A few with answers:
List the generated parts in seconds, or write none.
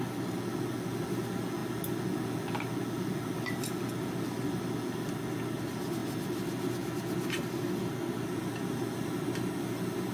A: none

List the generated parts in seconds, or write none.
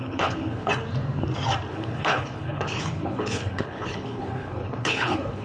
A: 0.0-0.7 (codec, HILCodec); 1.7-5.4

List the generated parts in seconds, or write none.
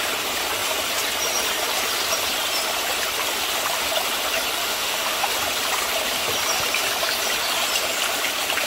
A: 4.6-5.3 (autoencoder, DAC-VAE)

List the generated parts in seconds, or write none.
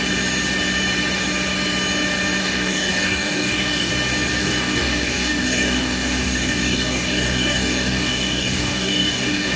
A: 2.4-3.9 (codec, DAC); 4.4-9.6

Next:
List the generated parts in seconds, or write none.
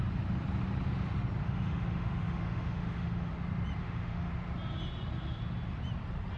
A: 1.4-3.3 (autoencoder, DAC-VAE); 3.8-4.3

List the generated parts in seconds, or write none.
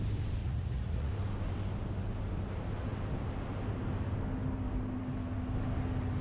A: 0.4-1.1 (vocoder, Vocos)